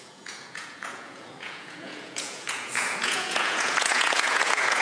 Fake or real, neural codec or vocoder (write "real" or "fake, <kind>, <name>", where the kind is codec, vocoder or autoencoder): fake, vocoder, Vocos